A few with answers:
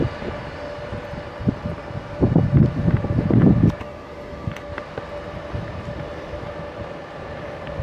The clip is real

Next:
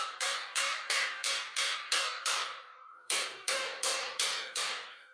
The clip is fake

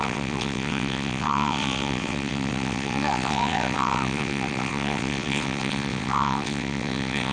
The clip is fake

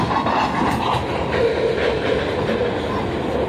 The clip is real